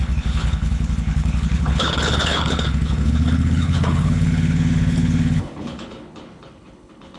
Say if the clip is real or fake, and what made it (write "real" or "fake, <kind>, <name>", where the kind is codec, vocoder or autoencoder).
fake, codec, HILCodec